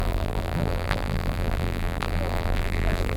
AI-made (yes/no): yes